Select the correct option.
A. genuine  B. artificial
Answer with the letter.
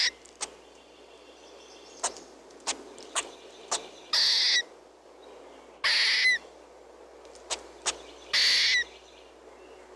A